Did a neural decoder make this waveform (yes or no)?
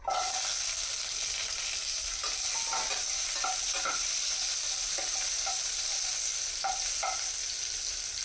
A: no